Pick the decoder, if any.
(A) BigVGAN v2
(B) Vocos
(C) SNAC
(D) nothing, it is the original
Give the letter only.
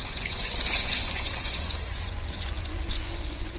B